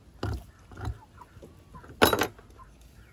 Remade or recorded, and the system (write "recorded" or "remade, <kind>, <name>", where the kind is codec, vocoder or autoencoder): recorded